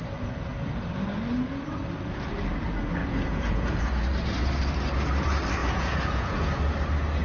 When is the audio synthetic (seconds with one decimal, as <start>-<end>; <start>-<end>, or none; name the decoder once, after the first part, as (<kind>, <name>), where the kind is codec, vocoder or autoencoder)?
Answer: 3.0-3.8 (vocoder, Vocos); 5.6-6.6